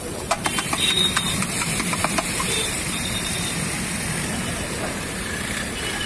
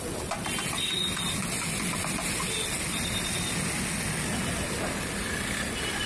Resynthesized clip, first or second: first